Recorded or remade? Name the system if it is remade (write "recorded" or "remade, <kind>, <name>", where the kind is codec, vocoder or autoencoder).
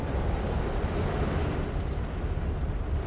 recorded